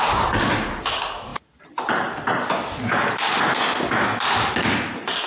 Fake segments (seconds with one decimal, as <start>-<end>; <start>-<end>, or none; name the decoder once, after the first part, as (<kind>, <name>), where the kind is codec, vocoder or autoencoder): none